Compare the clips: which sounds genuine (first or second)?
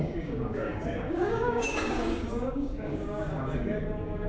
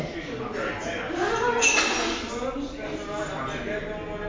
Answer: second